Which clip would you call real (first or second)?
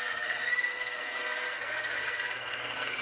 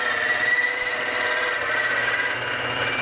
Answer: second